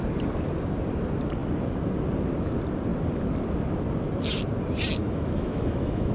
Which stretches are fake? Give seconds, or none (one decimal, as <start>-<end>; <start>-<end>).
5.0-6.1